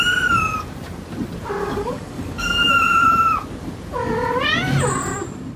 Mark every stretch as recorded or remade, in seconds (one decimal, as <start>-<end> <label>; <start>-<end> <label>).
0.0-1.6 recorded; 1.6-2.7 remade; 2.7-5.6 recorded